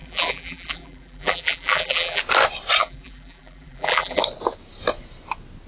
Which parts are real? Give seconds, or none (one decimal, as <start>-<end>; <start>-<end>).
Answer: 2.2-2.8; 4.2-5.7